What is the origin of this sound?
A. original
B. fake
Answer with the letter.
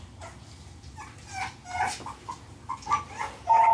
A